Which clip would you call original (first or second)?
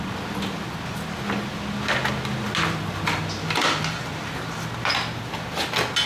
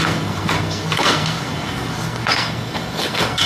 first